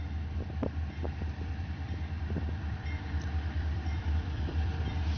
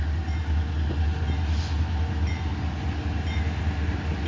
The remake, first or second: first